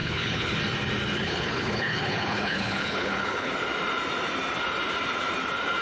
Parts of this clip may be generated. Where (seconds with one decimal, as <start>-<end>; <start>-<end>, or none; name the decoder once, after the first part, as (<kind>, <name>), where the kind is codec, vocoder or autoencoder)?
0.0-0.6 (codec, HILCodec); 1.2-3.5